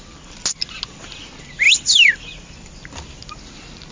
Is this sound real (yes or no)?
yes